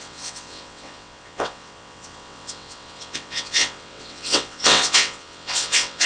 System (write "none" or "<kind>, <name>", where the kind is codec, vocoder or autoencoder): vocoder, WaveNeXt